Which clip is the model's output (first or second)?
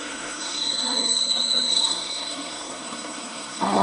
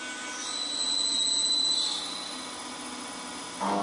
first